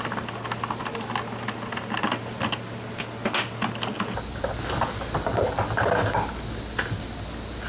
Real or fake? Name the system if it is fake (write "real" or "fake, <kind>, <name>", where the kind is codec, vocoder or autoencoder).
real